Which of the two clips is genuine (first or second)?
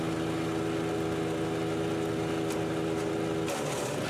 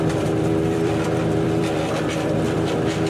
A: first